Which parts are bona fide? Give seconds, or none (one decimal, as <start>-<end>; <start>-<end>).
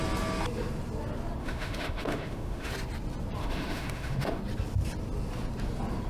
0.0-1.4; 2.7-3.4; 4.4-6.1